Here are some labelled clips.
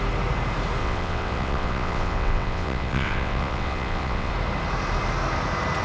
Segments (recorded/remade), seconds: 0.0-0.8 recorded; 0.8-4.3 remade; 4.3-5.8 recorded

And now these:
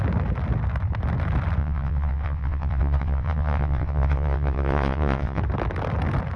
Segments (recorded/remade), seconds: 0.0-1.6 recorded; 1.6-5.4 remade; 5.4-6.4 recorded

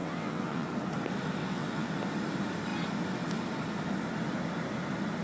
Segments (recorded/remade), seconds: 0.0-0.7 remade; 0.7-1.4 recorded; 1.4-1.9 remade; 1.9-5.2 recorded